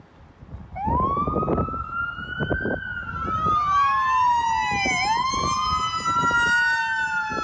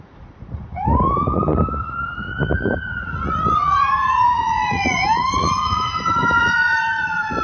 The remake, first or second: second